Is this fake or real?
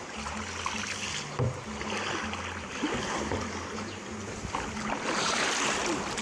real